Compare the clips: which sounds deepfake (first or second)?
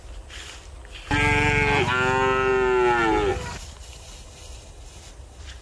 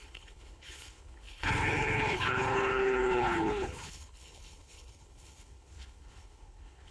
second